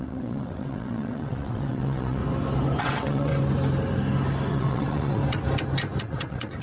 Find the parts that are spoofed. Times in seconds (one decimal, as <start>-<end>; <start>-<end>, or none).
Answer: 0.0-2.2; 2.8-3.3; 4.5-5.2; 6.0-6.6